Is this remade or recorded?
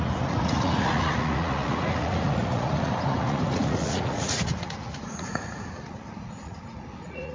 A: remade